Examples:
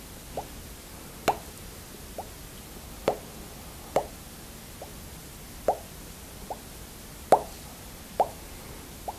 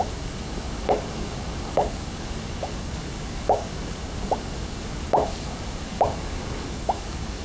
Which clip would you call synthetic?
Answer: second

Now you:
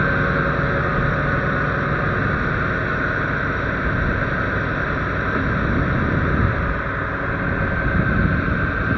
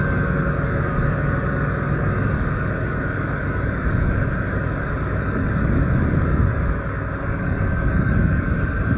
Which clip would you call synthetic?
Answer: second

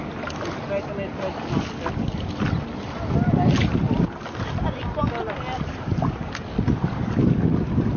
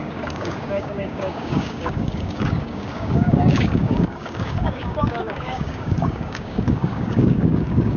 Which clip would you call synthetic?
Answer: second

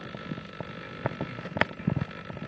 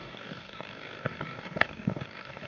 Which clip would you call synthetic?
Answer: second